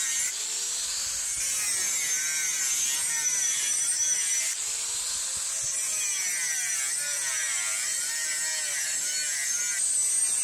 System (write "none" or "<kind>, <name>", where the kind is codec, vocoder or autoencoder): none